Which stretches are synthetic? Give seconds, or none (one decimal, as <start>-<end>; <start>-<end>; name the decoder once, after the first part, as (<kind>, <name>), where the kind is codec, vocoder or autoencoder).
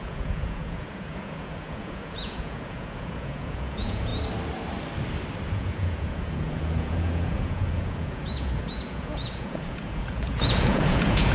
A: 0.0-4.1 (vocoder, Vocos); 5.5-11.3